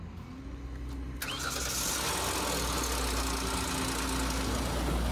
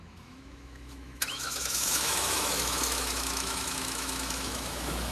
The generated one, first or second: second